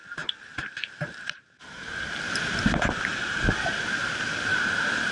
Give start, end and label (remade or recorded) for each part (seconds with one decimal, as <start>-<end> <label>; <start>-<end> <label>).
0.0-2.3 remade; 2.3-3.2 recorded; 3.2-3.8 remade; 3.8-4.5 recorded; 4.5-5.1 remade